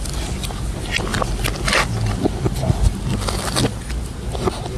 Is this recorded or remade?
recorded